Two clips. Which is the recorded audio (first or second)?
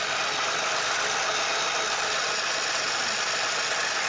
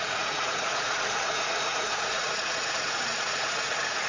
first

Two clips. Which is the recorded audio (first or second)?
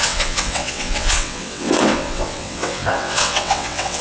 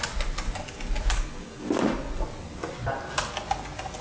second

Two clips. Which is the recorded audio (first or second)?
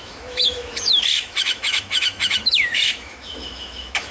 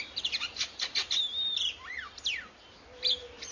second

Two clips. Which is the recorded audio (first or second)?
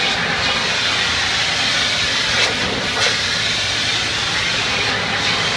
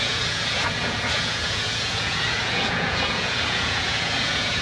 first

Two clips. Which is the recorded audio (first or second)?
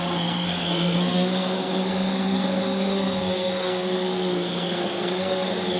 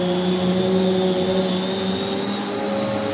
second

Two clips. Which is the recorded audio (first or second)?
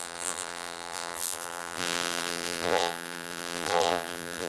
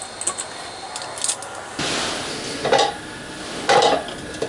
second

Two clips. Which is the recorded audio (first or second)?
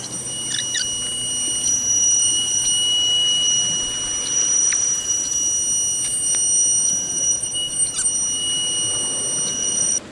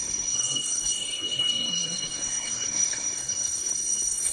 first